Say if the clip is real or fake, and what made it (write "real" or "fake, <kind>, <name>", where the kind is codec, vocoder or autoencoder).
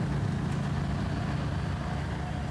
real